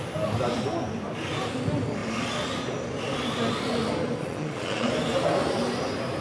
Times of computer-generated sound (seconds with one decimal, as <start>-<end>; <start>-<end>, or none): 4.2-4.9